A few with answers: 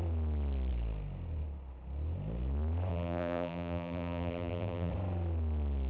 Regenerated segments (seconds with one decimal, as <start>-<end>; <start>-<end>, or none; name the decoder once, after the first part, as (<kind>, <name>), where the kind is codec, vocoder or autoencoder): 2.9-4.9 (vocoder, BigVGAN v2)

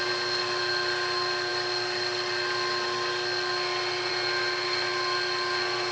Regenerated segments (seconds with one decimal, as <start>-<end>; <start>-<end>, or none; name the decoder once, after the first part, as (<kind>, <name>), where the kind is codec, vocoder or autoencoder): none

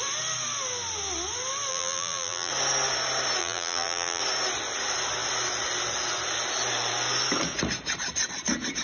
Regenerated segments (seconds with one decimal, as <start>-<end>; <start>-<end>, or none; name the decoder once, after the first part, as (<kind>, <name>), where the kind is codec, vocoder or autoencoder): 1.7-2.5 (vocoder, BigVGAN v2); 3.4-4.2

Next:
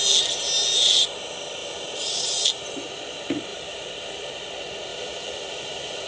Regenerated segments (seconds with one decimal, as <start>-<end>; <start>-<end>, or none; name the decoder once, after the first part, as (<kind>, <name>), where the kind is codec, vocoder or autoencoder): 1.6-2.6 (vocoder, BigVGAN v2); 3.5-4.3; 4.9-6.1

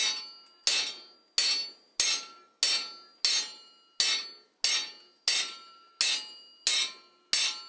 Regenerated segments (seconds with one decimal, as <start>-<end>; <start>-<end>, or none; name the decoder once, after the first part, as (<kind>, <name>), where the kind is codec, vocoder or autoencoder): none

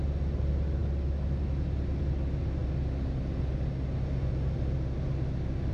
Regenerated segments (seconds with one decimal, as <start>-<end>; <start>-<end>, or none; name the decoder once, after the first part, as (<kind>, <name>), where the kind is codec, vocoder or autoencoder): none

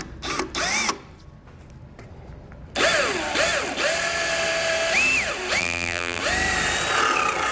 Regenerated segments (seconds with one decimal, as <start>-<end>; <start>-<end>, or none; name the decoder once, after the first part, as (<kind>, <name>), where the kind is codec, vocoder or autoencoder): 5.6-6.2 (vocoder, BigVGAN v2)

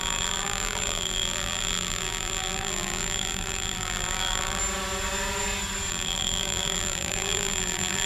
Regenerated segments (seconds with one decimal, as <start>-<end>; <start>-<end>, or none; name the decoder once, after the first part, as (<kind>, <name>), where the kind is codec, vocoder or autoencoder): 0.0-4.6 (vocoder, BigVGAN v2); 5.9-8.1